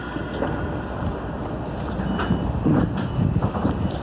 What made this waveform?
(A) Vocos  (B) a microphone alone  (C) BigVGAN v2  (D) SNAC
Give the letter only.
B